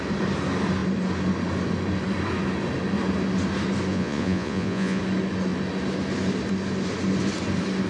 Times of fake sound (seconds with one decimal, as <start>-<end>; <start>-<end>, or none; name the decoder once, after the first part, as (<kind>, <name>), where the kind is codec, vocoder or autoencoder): 3.9-5.0 (vocoder, Vocos)